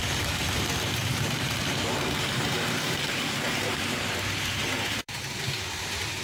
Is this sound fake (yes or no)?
yes